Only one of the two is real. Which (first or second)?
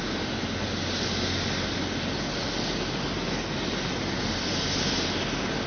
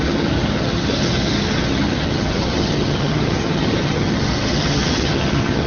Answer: first